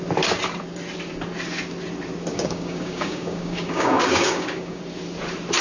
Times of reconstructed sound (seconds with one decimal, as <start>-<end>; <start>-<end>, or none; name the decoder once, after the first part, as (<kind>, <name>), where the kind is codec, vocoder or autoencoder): 2.3-4.8 (codec, DAC)